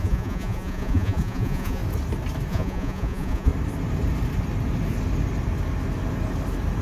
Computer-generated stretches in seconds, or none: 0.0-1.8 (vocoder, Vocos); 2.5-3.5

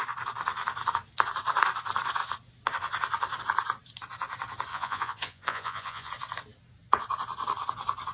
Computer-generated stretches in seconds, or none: 4.7-6.1 (vocoder, Vocos)

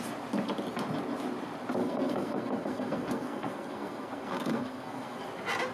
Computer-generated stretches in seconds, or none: 1.8-5.2 (codec, SNAC)

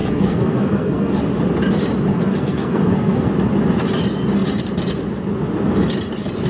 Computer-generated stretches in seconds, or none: 0.0-1.2 (codec, SNAC); 2.1-3.3

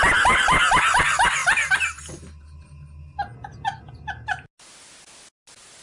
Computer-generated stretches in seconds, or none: none

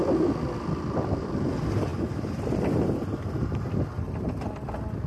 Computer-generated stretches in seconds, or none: none

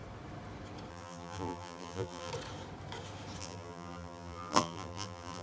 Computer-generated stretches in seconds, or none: 0.9-2.3 (vocoder, BigVGAN v2); 3.4-5.4

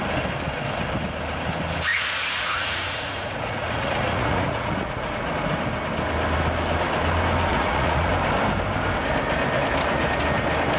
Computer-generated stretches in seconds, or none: 1.9-5.3 (vocoder, Vocos); 7.5-8.1